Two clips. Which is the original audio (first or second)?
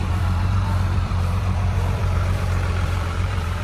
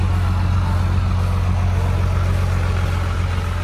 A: second